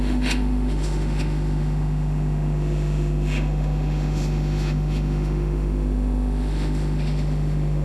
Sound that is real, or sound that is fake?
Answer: fake